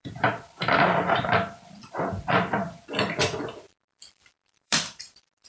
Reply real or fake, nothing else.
fake